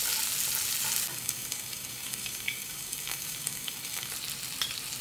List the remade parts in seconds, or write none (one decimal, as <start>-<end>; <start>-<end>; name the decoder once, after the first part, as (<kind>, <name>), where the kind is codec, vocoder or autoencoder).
1.1-4.1 (codec, DAC)